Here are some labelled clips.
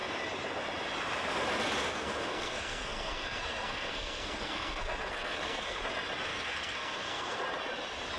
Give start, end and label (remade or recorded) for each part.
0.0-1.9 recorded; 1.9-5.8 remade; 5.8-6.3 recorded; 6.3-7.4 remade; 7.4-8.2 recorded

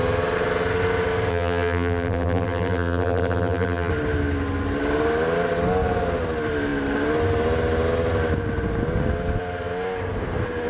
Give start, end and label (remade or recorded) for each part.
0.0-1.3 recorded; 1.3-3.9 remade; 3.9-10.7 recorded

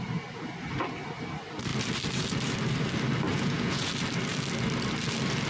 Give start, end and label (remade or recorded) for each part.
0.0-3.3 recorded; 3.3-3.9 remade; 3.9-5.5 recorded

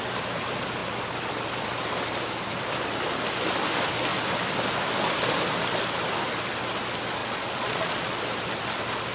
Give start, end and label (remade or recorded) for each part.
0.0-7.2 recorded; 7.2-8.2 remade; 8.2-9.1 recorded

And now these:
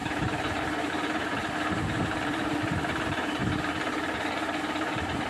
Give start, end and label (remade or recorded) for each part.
0.0-3.4 remade; 3.4-4.6 recorded; 4.6-5.3 remade